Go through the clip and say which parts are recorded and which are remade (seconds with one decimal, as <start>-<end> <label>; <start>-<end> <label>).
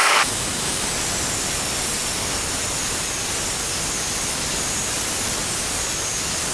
0.0-0.8 remade; 0.8-6.5 recorded